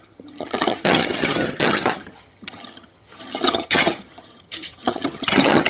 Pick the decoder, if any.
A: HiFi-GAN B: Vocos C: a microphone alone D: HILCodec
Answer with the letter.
A